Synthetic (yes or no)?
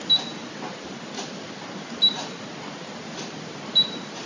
no